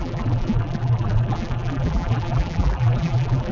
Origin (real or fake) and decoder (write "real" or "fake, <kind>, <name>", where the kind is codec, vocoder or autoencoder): fake, vocoder, BigVGAN v2